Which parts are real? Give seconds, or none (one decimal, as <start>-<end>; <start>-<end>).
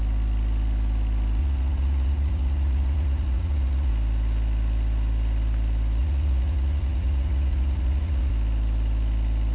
0.0-1.4; 3.9-6.0; 8.3-9.5